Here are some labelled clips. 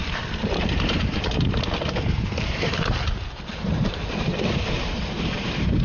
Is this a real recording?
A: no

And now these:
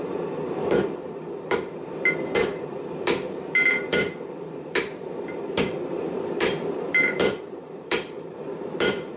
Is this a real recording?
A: no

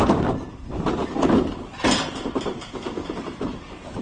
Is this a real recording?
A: yes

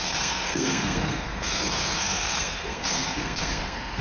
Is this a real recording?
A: no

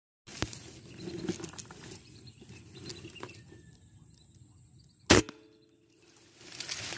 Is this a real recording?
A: yes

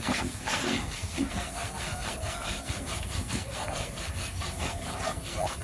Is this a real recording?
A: no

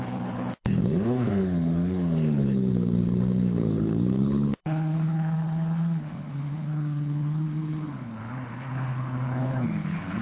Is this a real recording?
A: no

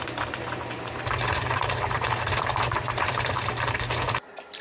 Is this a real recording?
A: no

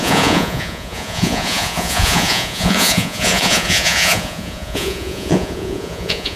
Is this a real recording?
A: no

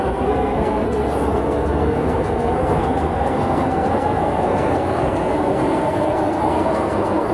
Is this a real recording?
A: no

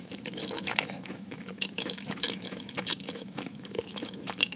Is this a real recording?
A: no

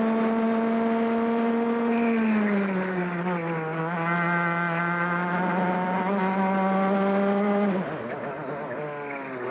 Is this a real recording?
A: yes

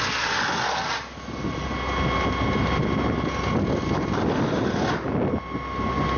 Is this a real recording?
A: yes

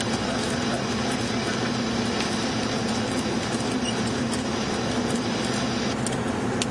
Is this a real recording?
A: yes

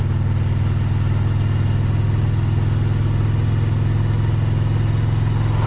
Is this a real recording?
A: yes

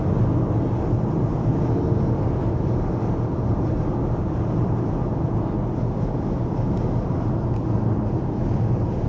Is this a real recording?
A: yes